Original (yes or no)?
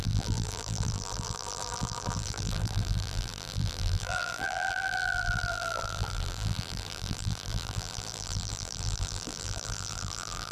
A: no